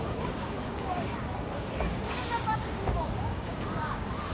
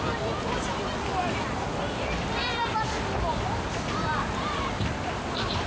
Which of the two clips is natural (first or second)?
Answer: second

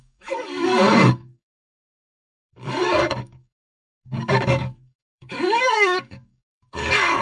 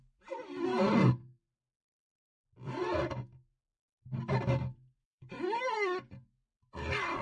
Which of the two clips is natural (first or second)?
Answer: second